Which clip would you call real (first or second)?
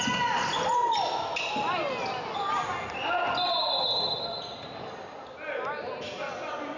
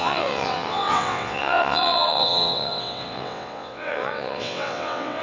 first